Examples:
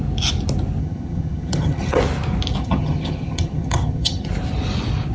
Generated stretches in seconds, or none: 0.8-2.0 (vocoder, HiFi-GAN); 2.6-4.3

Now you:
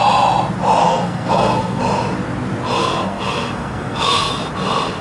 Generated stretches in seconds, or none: 0.8-1.8 (codec, SNAC); 2.8-4.3

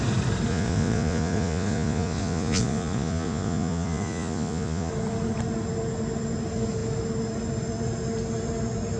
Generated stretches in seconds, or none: 0.5-4.9 (vocoder, Vocos)

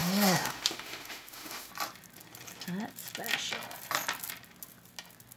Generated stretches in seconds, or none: 0.0-1.7 (autoencoder, DAC-VAE)

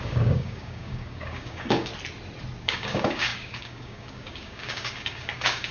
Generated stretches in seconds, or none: 0.0-1.9 (codec, DAC); 2.6-5.7